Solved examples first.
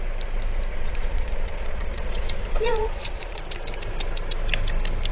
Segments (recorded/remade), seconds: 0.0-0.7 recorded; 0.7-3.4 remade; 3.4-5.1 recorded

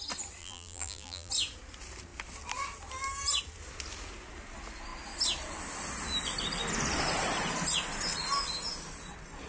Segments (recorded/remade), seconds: 0.0-0.4 recorded; 0.4-1.3 remade; 1.3-9.5 recorded

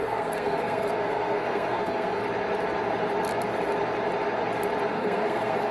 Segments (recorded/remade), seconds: 0.0-2.2 remade; 2.2-4.9 recorded; 4.9-5.7 remade

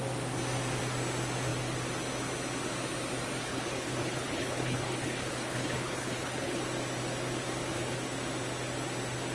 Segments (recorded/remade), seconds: 0.0-3.4 recorded; 3.4-6.6 remade; 6.6-9.3 recorded